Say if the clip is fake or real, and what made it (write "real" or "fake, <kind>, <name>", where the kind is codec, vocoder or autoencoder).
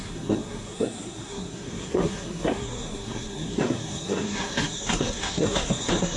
fake, codec, SNAC